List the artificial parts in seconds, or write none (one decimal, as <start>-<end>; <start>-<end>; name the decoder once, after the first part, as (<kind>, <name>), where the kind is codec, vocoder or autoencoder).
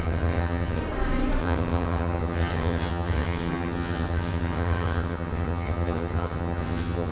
0.0-0.8 (vocoder, HiFi-GAN); 1.4-7.1